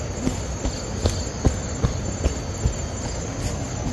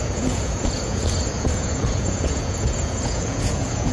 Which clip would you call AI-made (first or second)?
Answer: second